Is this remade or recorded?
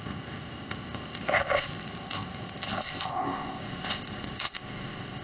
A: remade